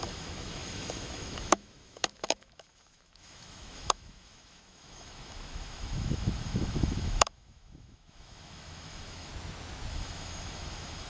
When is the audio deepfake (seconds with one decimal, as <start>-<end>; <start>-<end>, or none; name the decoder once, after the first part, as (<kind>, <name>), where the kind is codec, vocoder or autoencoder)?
0.0-9.3 (autoencoder, DAC-VAE); 9.9-11.1